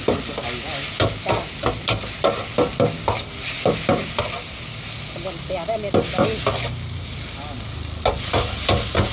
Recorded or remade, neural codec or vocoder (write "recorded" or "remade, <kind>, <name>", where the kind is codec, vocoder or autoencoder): recorded